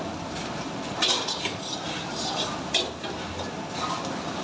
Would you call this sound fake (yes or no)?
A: no